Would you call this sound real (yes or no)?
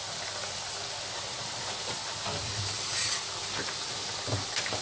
yes